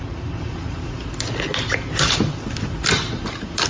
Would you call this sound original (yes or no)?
yes